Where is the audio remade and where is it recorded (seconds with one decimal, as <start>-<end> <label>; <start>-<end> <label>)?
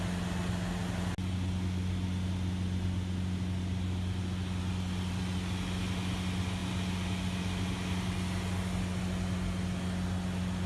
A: 0.0-10.7 recorded